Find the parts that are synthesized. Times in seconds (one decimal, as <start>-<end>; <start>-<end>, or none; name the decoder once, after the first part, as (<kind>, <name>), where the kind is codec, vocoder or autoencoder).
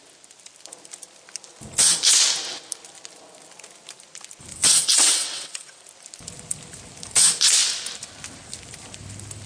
4.5-5.8 (vocoder, WaveNeXt)